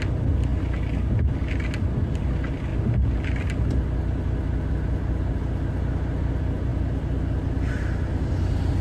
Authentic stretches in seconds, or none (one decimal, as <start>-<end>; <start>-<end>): 0.0-8.8